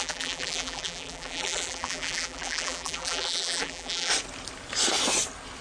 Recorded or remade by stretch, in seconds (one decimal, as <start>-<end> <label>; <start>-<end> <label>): 0.0-4.1 remade; 4.1-5.6 recorded